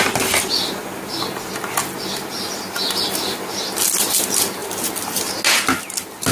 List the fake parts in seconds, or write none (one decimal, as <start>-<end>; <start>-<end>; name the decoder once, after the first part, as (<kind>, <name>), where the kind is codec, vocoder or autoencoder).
4.6-5.4 (vocoder, BigVGAN v2)